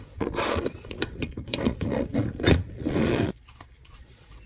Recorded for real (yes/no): no